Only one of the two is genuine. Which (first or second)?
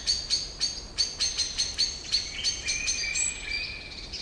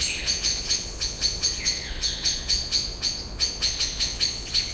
first